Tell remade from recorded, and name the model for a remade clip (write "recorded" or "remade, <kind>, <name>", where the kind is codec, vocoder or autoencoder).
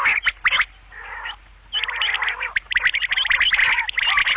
recorded